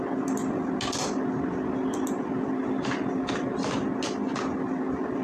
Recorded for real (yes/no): yes